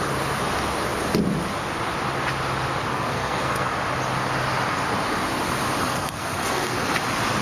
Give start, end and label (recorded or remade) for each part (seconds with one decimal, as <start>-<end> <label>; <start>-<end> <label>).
0.0-2.9 recorded; 2.9-3.7 remade; 3.7-5.8 recorded; 5.8-7.0 remade; 7.0-7.4 recorded